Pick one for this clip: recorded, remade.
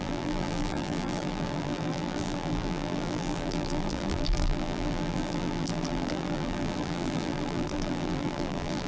remade